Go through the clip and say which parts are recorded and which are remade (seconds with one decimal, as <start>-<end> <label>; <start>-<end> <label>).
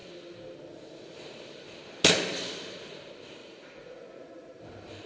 0.0-3.4 recorded; 3.4-4.6 remade; 4.6-5.1 recorded